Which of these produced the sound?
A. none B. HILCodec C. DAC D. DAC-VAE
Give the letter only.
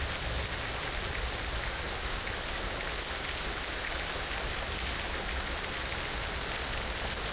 A